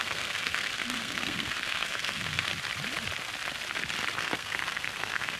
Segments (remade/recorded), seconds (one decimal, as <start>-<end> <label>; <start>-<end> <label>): 0.0-2.5 remade; 2.5-4.2 recorded; 4.2-5.4 remade